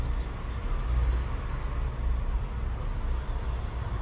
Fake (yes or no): no